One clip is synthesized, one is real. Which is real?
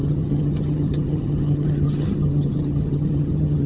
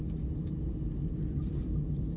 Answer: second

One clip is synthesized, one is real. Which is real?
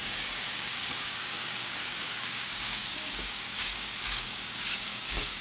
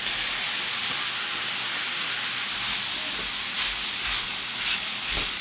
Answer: second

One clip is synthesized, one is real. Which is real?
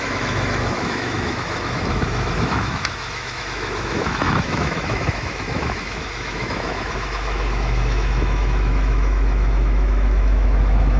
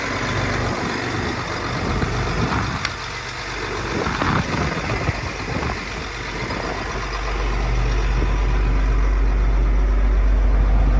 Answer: second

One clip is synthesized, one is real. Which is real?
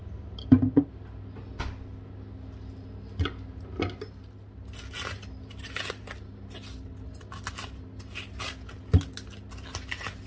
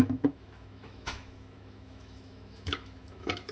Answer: first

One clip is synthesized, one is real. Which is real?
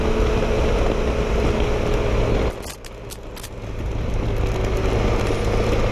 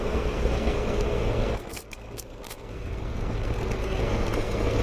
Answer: first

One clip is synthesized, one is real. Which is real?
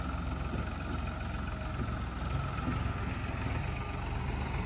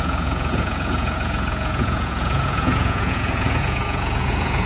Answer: first